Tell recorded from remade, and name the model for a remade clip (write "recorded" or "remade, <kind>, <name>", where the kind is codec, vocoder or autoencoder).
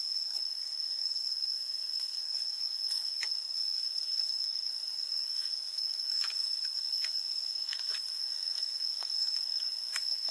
remade, codec, SNAC